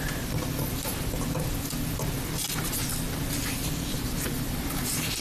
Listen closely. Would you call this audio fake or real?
real